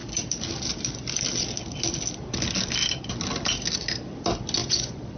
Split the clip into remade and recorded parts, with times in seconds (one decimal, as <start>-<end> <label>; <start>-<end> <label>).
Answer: 0.0-4.6 recorded; 4.6-5.2 remade

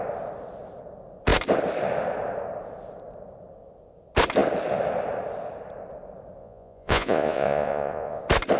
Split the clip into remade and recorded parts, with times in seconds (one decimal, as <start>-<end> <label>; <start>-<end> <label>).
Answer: 0.0-6.4 recorded; 6.4-8.2 remade; 8.2-8.6 recorded

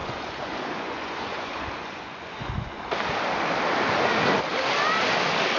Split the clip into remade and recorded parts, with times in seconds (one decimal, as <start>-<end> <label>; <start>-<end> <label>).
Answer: 0.0-2.8 remade; 2.8-5.6 recorded

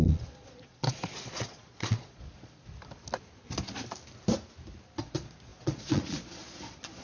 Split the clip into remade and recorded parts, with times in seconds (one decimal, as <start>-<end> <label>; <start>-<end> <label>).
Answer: 0.0-2.7 remade; 2.7-5.0 recorded; 5.0-7.0 remade

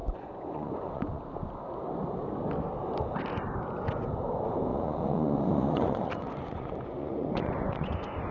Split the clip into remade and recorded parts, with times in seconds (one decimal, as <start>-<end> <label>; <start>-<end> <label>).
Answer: 0.0-1.2 remade; 1.2-4.7 recorded; 4.7-8.3 remade